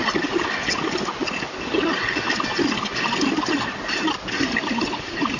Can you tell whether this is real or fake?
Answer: real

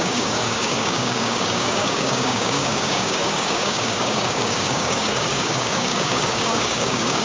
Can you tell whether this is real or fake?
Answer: fake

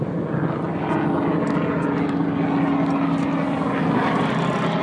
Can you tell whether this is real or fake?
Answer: real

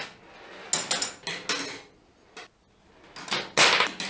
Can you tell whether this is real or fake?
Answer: real